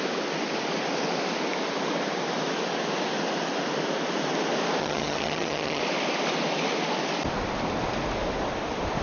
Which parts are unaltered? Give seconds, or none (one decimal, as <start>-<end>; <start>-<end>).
0.0-4.8; 5.8-9.0